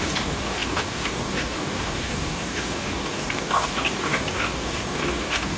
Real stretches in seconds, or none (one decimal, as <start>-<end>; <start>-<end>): none